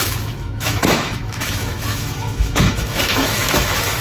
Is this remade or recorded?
remade